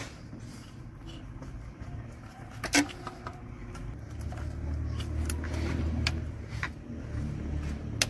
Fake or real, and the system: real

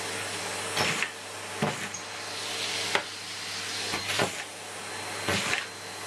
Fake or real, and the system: real